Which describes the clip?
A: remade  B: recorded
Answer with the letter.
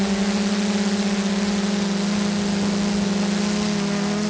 B